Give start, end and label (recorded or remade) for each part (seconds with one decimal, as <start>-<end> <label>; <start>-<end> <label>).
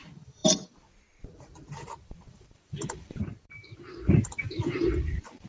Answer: 0.0-5.5 remade